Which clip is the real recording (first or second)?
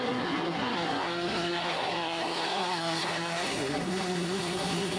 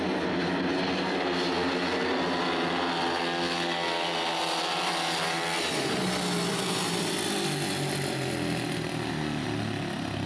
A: second